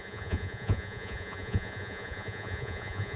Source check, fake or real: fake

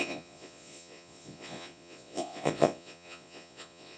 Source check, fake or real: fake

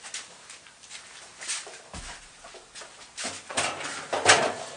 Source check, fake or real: real